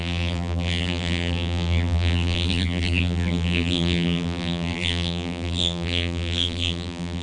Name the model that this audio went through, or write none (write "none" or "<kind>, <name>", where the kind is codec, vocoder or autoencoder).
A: vocoder, BigVGAN v2